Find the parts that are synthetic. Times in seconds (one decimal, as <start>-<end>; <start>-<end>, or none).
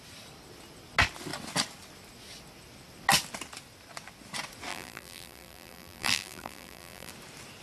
4.7-7.1